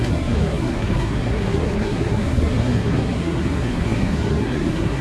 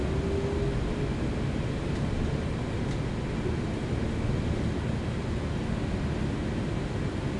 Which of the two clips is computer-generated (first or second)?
first